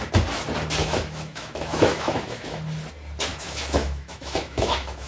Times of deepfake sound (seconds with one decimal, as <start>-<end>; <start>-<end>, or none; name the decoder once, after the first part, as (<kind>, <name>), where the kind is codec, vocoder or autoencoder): 0.8-2.6 (autoencoder, DAC-VAE); 3.3-5.1